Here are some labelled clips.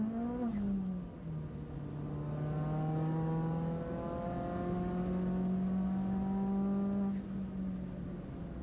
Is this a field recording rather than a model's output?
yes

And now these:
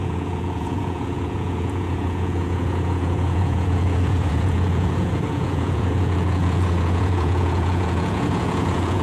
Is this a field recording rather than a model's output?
no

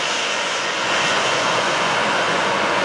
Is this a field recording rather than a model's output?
no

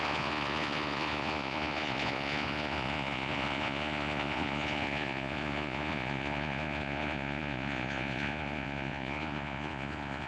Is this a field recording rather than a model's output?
no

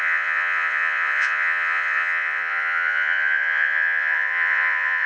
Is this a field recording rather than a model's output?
no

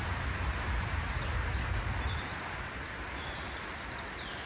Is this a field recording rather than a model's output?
yes